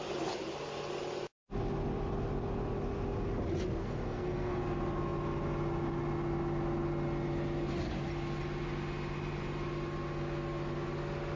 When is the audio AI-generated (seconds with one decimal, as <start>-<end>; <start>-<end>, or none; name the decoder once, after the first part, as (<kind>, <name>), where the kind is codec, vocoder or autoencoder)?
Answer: 3.8-4.6 (codec, SNAC)